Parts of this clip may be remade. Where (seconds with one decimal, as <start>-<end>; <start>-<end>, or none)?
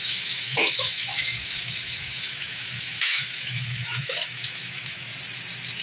0.0-5.1